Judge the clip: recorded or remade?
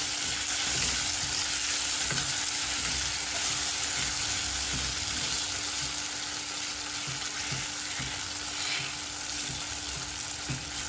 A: recorded